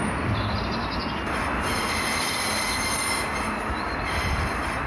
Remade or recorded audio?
recorded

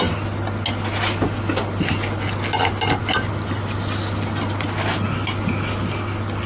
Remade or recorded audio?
recorded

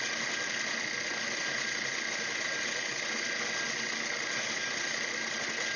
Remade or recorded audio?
recorded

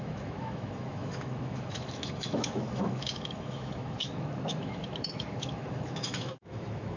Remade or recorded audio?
remade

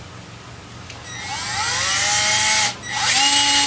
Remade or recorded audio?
recorded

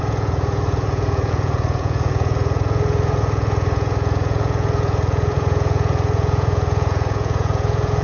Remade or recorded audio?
remade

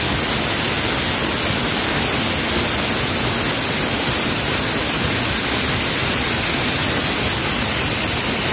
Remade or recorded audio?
recorded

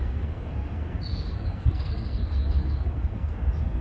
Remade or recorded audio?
remade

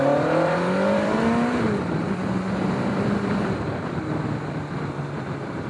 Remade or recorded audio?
remade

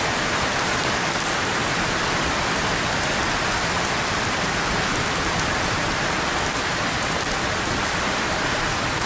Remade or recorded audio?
remade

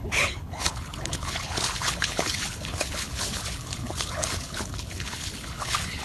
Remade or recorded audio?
remade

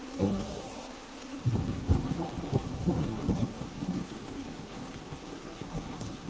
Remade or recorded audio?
remade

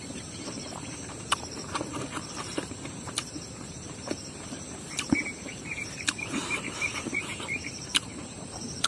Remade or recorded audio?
remade